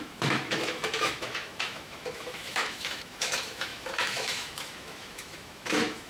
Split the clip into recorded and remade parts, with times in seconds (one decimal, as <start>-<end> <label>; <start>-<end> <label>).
0.0-6.1 remade